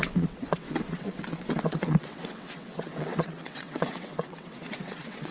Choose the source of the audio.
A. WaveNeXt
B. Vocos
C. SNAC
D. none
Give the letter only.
A